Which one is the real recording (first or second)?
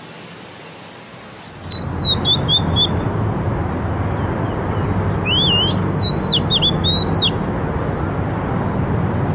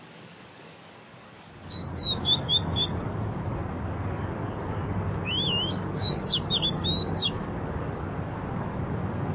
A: first